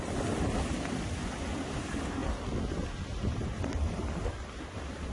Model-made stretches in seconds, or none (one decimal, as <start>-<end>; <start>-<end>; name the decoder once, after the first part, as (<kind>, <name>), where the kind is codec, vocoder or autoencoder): none